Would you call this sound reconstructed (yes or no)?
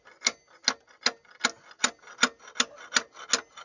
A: no